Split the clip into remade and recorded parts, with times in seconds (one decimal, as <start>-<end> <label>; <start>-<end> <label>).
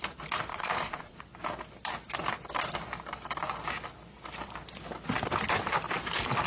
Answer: 0.0-0.5 recorded; 0.5-1.2 remade; 1.2-6.5 recorded